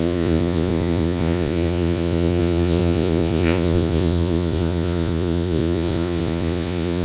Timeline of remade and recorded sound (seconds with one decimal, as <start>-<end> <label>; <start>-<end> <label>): 0.0-7.0 remade